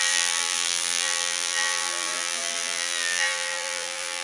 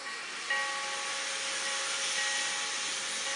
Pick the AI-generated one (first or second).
first